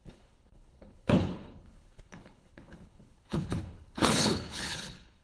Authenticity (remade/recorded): remade